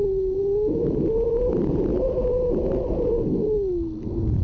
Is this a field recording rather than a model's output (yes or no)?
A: yes